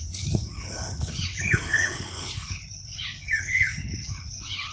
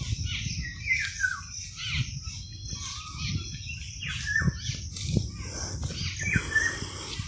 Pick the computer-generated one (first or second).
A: first